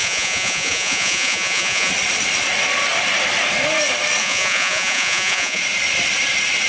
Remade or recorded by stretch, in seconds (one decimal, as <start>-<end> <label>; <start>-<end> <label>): 0.0-1.9 remade; 1.9-4.2 recorded; 4.2-5.6 remade; 5.6-6.7 recorded